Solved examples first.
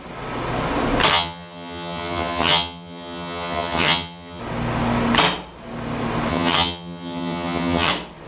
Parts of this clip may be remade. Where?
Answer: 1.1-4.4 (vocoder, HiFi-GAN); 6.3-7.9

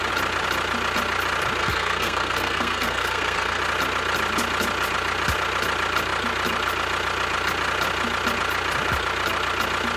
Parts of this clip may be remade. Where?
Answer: 1.6-3.6 (codec, SNAC)

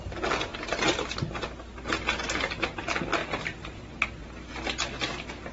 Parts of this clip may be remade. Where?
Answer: none